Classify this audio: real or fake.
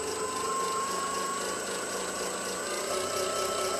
real